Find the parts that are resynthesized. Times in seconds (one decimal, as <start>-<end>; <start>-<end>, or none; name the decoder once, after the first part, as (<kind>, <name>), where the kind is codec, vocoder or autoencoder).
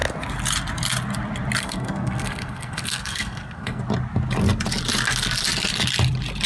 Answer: 1.6-3.8 (codec, SNAC)